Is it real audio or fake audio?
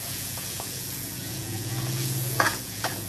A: fake